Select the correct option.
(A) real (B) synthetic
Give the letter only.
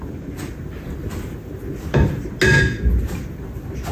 A